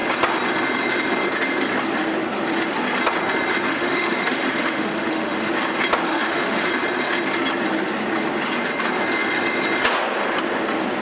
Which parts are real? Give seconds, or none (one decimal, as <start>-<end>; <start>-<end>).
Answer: 0.0-3.7; 5.5-6.1; 6.7-11.0